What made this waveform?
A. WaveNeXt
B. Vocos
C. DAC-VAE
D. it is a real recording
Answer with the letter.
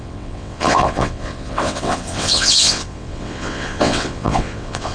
A